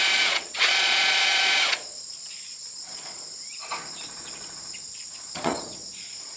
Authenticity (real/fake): fake